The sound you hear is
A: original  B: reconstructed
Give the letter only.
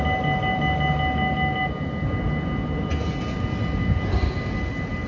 A